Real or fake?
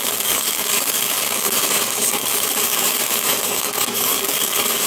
fake